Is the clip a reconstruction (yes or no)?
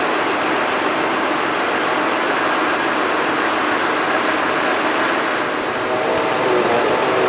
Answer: no